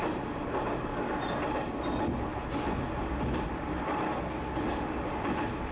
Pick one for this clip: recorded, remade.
recorded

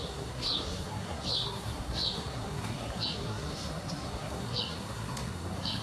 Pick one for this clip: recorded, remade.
remade